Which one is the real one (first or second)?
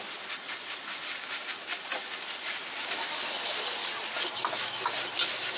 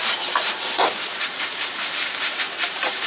first